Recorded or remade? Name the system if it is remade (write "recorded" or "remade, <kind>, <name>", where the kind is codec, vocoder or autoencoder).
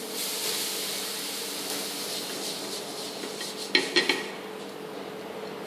recorded